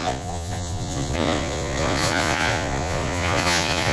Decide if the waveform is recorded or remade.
remade